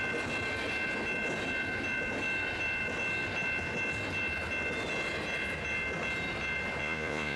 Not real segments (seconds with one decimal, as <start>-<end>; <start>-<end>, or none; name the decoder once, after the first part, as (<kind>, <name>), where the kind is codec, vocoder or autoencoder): 6.8-7.4 (vocoder, Vocos)